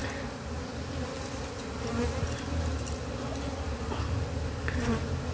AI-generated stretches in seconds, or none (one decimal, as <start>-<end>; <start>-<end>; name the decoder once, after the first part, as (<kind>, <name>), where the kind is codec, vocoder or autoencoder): none

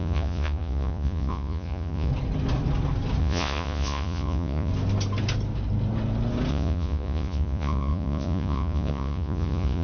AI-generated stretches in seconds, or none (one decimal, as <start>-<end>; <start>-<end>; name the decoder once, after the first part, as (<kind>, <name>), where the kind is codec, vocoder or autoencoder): 0.0-2.1 (vocoder, Vocos); 3.2-4.7; 6.5-9.8

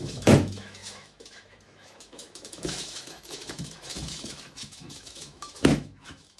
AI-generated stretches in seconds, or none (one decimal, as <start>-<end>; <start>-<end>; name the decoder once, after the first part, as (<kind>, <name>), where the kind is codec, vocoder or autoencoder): 0.0-6.4 (autoencoder, DAC-VAE)

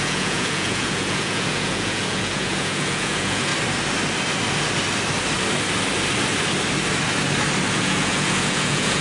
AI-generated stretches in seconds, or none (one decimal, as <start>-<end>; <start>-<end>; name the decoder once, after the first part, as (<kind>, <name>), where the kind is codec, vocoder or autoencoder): 0.0-3.5 (vocoder, Vocos); 7.7-9.0